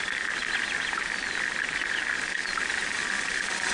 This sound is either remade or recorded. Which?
recorded